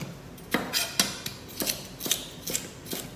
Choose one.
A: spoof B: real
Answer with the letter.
B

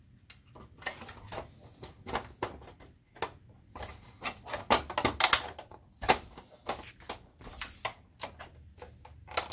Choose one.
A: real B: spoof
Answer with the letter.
A